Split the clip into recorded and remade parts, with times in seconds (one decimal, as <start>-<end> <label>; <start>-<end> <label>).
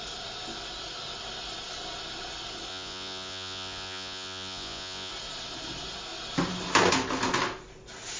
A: 0.0-2.7 recorded; 2.7-5.1 remade; 5.1-8.2 recorded